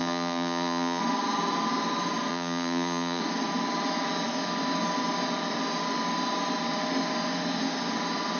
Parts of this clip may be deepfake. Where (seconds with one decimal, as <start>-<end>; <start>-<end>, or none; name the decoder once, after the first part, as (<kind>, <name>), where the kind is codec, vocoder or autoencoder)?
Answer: 0.0-1.0 (vocoder, Vocos); 2.3-3.2

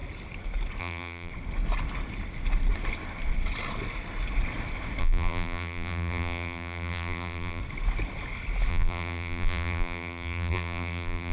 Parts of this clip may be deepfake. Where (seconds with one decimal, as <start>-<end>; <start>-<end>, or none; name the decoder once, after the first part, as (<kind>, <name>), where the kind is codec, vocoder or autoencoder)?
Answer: 0.8-1.3 (vocoder, BigVGAN v2); 5.0-7.6; 8.7-11.3

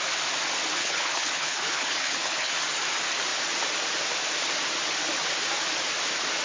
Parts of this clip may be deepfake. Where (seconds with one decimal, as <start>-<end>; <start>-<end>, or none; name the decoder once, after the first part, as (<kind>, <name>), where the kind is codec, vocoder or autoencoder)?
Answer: 0.8-2.5 (codec, HILCodec)

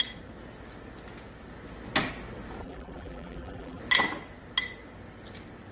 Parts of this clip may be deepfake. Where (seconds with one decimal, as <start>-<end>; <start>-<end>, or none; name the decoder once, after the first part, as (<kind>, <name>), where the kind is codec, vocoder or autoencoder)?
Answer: 2.6-3.8 (vocoder, BigVGAN v2)

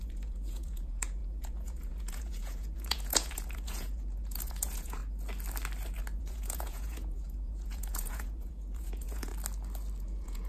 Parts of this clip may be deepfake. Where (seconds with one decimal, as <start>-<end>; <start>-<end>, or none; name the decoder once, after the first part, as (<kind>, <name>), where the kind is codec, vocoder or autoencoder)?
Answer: 0.0-5.0 (vocoder, Vocos); 6.2-9.3; 10.0-10.5